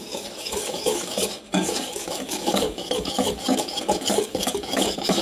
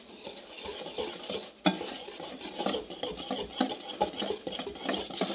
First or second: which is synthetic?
first